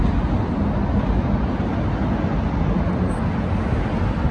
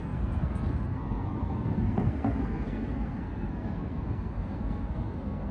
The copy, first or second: second